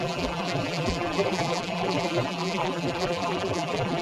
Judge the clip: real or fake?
fake